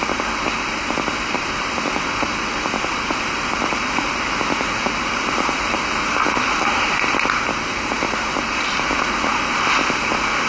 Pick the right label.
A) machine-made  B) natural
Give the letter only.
B